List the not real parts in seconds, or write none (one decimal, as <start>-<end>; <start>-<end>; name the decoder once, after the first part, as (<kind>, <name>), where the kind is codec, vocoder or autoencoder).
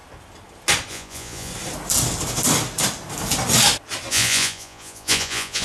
0.9-1.5 (vocoder, Vocos); 4.1-5.6